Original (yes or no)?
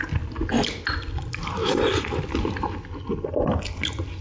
yes